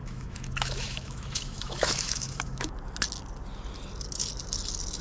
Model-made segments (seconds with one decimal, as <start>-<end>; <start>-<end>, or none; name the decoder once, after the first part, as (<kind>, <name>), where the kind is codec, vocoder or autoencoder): 0.0-2.7 (autoencoder, DAC-VAE)